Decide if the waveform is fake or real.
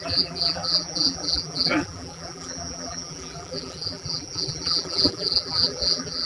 fake